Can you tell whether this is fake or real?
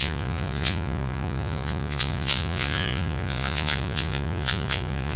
fake